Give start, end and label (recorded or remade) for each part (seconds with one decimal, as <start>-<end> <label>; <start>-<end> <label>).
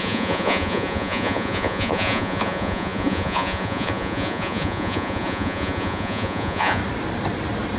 0.0-6.8 remade; 6.8-7.8 recorded